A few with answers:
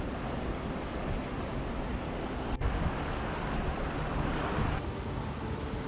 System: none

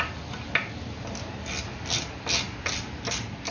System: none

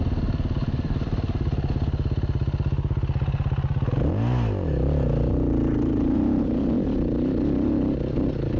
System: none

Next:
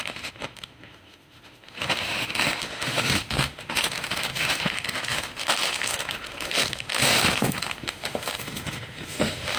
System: autoencoder, DAC-VAE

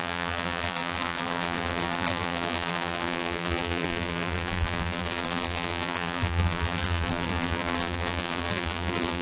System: vocoder, BigVGAN v2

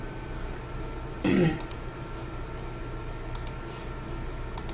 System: none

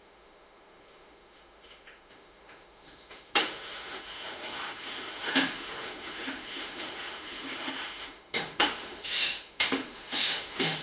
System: autoencoder, DAC-VAE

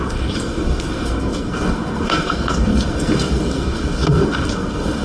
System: codec, SNAC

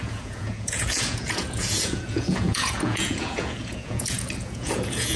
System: vocoder, Vocos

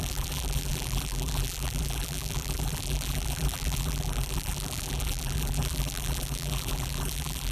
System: vocoder, BigVGAN v2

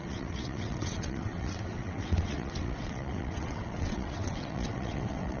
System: vocoder, WaveNeXt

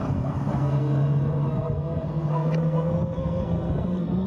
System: codec, SNAC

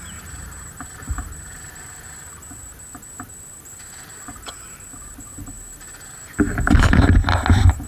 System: none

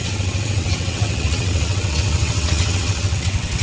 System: vocoder, WaveNeXt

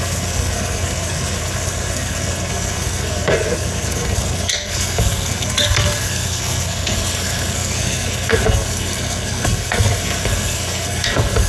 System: codec, SNAC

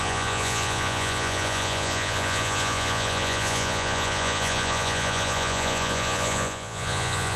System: vocoder, Vocos